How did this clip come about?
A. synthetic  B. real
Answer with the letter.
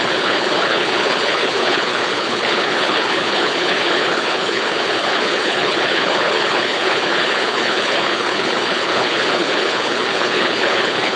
A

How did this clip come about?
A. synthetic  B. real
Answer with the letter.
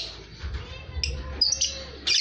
B